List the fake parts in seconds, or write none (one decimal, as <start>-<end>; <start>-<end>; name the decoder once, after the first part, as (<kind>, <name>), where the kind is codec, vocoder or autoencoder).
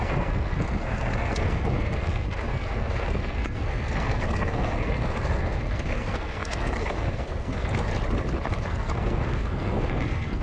0.0-7.9 (codec, SNAC); 8.5-10.4